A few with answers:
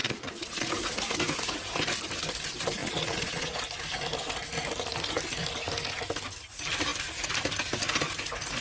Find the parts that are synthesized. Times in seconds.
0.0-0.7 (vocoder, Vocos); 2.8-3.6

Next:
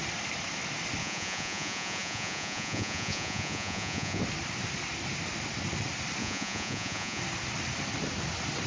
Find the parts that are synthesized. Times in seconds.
1.0-4.2 (vocoder, Vocos); 6.2-7.2

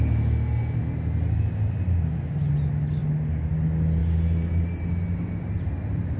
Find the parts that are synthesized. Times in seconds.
none

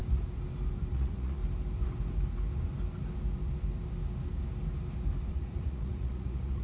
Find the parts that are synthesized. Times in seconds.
0.9-1.4 (vocoder, Vocos); 5.3-6.6